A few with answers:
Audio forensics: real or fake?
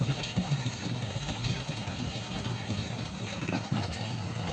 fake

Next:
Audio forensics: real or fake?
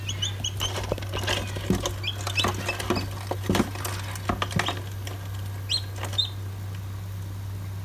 real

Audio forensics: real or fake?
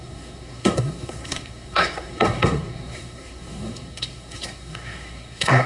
fake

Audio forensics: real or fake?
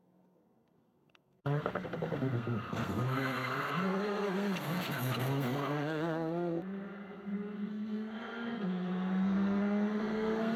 fake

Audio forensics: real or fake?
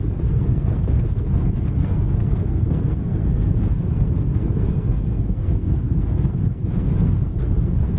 fake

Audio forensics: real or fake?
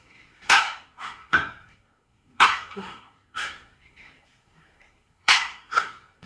fake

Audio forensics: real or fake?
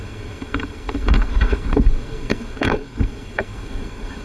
fake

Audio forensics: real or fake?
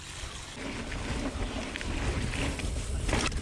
real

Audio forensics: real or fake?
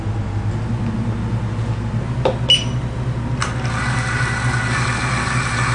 real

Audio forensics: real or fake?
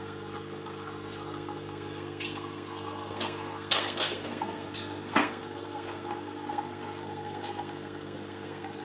fake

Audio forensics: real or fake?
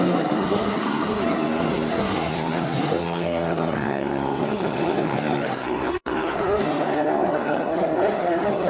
fake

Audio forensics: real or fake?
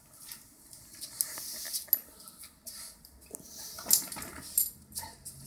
real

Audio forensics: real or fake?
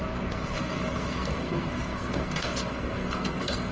fake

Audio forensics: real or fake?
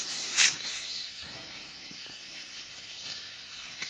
fake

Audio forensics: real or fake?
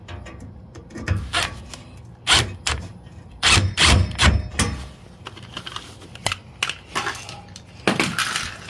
real